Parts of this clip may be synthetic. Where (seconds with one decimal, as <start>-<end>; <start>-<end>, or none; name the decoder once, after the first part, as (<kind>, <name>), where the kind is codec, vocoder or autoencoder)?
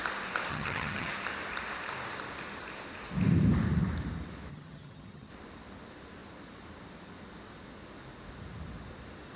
0.5-1.1 (vocoder, HiFi-GAN); 4.5-5.3